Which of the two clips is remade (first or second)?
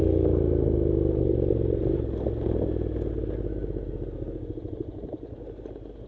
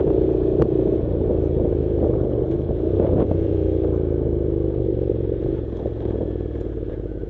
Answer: second